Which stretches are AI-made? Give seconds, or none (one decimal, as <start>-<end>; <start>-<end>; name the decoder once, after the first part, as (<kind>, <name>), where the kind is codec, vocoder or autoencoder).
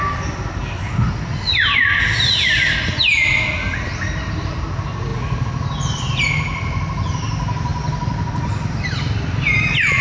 none